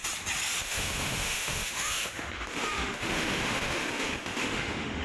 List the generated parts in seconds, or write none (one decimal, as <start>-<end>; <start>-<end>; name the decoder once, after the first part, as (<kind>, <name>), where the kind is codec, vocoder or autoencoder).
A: 0.6-5.0 (autoencoder, DAC-VAE)

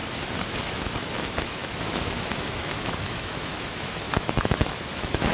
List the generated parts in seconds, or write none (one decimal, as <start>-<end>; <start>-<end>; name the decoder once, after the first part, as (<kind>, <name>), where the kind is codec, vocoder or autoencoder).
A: 0.6-5.3 (autoencoder, DAC-VAE)